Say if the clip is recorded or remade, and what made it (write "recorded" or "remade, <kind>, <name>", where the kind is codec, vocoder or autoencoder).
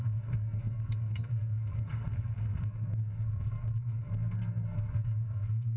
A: remade, codec, SNAC